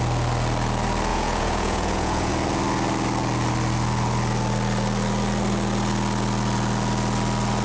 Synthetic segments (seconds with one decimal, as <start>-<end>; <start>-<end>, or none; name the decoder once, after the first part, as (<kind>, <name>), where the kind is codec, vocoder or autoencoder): 1.1-2.3 (vocoder, Vocos)